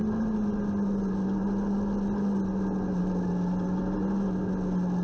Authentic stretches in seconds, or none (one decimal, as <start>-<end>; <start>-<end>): 0.0-5.0